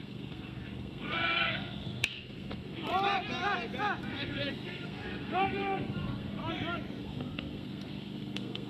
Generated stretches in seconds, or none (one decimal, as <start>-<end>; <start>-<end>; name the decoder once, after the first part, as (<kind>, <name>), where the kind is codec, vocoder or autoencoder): 0.0-2.9 (codec, SNAC); 4.0-6.4; 7.0-8.7